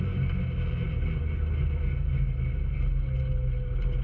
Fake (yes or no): no